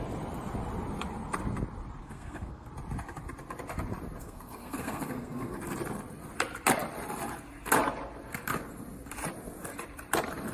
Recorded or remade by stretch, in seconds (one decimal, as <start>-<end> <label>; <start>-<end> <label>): 0.0-2.0 recorded; 2.0-2.7 remade; 2.7-4.2 recorded; 4.2-5.6 remade; 5.6-10.5 recorded